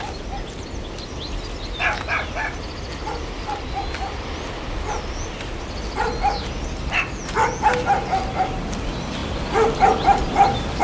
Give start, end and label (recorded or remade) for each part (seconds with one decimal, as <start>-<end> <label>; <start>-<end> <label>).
0.0-10.8 recorded